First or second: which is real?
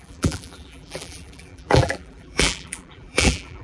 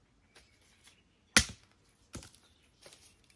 second